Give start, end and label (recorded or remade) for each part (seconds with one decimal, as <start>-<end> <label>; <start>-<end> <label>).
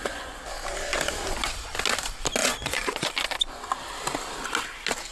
0.0-0.5 remade; 0.5-2.4 recorded; 2.4-3.1 remade; 3.1-5.1 recorded